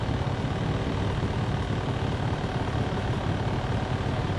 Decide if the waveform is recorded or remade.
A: recorded